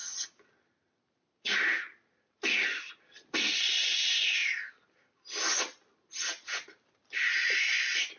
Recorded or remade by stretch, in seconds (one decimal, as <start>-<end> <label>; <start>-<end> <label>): 0.0-8.2 recorded